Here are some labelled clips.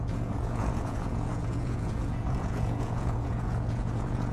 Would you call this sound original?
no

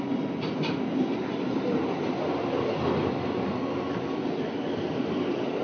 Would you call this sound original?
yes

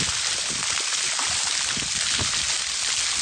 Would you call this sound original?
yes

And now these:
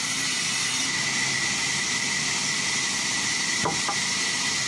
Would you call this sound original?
yes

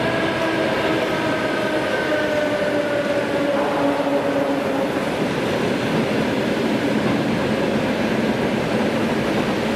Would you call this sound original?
yes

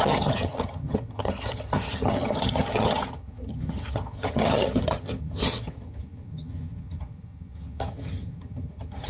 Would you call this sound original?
no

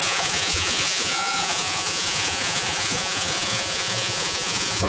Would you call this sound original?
no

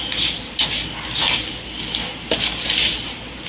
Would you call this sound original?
yes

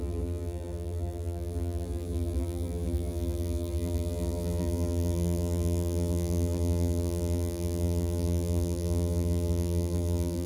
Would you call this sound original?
no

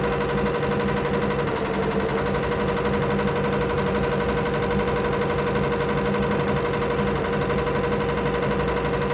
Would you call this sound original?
yes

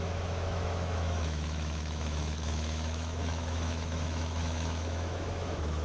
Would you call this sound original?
no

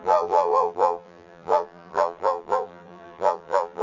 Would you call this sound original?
no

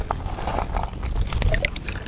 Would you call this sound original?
yes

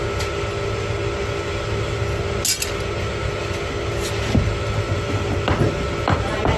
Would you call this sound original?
yes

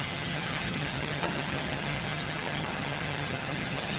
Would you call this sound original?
no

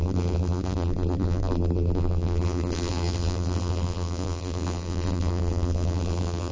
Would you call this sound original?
no